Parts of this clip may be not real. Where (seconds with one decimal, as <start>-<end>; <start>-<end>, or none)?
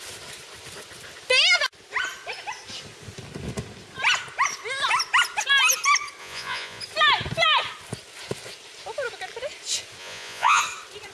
6.2-6.8; 10.0-10.6